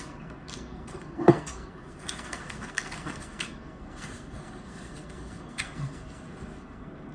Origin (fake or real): fake